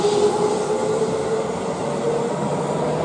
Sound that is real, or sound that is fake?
real